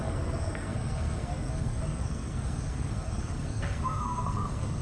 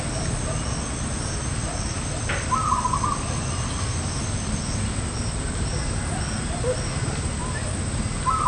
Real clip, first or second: second